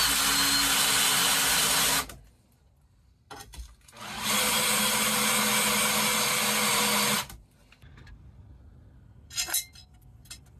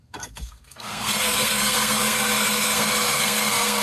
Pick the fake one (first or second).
second